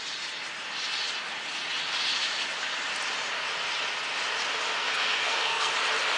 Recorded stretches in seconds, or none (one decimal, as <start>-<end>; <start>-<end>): 0.0-4.8; 5.7-6.2